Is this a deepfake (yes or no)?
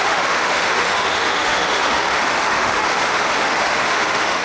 yes